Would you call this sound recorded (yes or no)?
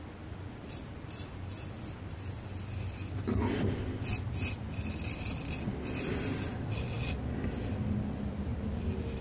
yes